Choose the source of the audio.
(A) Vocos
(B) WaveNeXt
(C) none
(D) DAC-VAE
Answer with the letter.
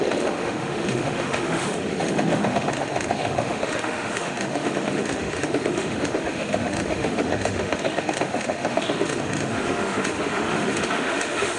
D